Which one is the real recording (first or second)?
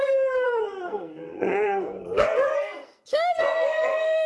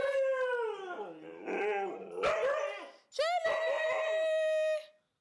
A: second